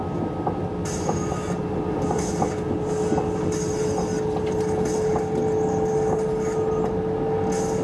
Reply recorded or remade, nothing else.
recorded